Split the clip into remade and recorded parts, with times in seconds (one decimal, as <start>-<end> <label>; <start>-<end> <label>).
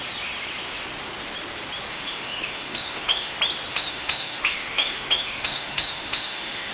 0.0-1.9 recorded; 1.9-3.3 remade; 3.3-3.7 recorded; 3.7-6.7 remade